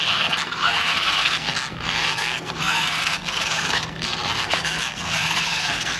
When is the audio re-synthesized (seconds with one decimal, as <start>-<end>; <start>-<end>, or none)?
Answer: 0.0-6.0